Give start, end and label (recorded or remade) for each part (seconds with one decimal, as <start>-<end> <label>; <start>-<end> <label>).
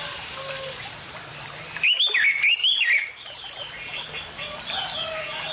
0.0-5.5 recorded